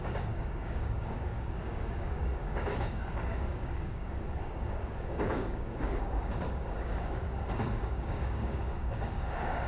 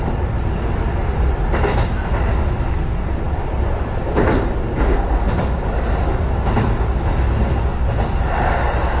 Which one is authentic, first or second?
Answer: second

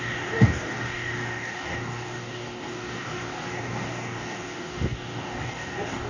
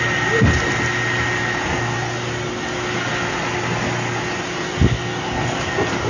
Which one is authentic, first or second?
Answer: second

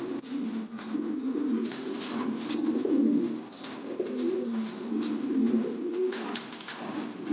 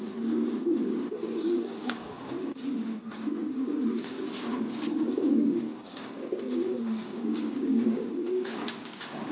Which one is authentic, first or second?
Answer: first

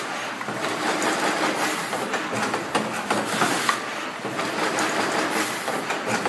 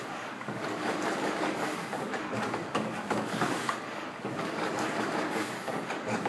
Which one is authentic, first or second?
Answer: first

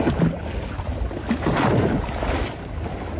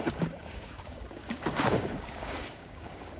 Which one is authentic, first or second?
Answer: first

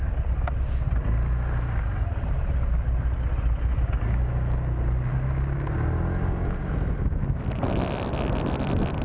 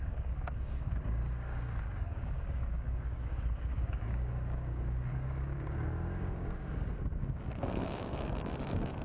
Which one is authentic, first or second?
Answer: first